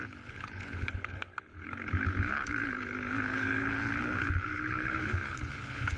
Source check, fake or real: fake